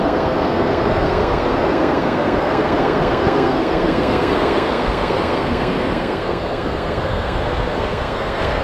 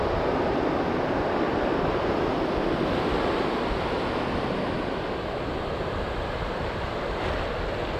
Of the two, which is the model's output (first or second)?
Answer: first